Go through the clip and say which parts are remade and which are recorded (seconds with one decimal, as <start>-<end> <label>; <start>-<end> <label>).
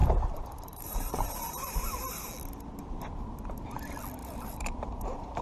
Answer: 0.0-2.0 remade; 2.0-4.2 recorded; 4.2-5.4 remade